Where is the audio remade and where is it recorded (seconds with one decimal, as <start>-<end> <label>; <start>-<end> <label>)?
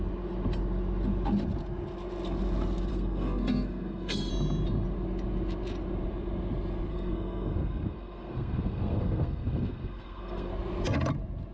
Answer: 0.0-2.9 recorded; 2.9-4.3 remade; 4.3-6.9 recorded; 6.9-10.5 remade; 10.5-11.5 recorded